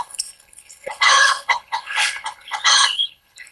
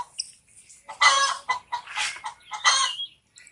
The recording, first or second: second